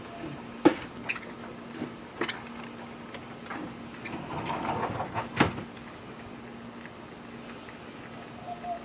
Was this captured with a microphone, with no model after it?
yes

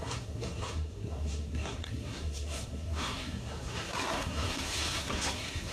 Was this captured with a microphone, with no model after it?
no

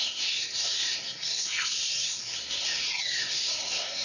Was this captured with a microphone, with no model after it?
no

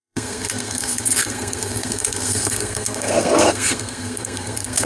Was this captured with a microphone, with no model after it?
no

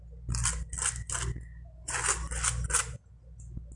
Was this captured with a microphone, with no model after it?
yes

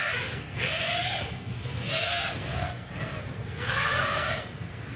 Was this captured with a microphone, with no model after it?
no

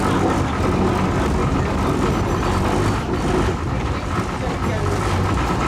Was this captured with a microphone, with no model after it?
yes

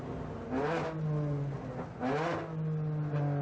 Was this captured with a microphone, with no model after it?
yes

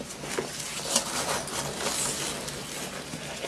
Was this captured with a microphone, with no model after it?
yes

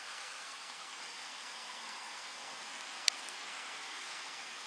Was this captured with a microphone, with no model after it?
no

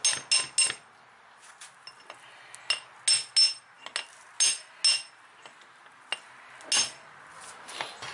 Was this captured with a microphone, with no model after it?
yes